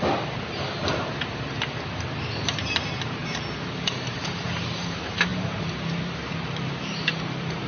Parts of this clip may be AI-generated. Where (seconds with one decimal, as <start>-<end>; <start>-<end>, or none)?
0.0-3.2; 4.1-7.7